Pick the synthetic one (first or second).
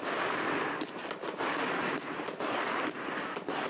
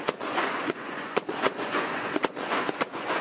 second